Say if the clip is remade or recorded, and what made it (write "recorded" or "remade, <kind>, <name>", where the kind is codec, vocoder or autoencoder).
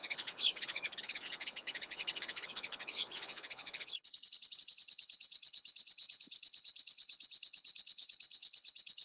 remade, codec, HILCodec